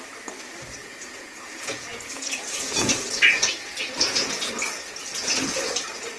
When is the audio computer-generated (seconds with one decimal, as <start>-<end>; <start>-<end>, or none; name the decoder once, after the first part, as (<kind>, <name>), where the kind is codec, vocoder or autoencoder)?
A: 0.8-4.5 (vocoder, Vocos); 5.0-5.6